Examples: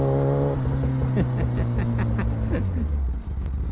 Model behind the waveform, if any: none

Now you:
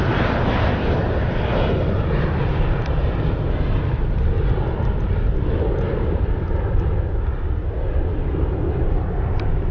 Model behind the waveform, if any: none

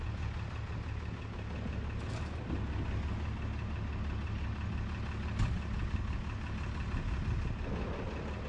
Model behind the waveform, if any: none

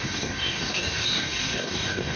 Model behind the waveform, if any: codec, DAC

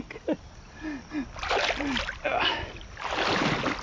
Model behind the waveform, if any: none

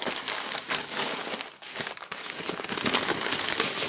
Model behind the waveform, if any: codec, DAC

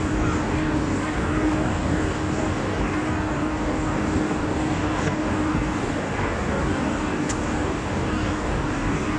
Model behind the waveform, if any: codec, DAC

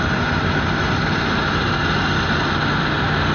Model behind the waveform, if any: none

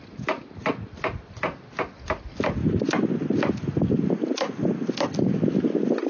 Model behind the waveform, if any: none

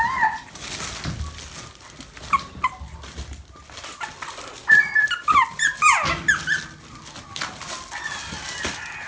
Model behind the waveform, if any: none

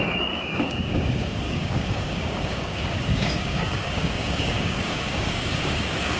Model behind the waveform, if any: codec, DAC